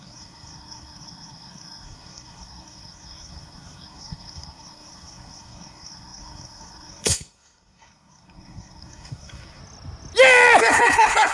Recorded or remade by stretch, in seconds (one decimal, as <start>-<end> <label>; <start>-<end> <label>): 0.0-9.6 remade; 9.6-10.6 recorded; 10.6-11.3 remade